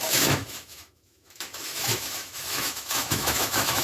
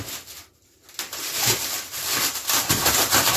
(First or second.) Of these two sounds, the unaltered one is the second